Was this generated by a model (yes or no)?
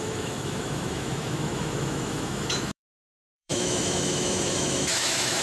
yes